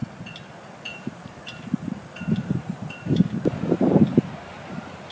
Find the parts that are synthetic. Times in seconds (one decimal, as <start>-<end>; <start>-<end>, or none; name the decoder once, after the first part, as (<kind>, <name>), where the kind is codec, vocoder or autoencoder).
0.9-4.0 (vocoder, BigVGAN v2)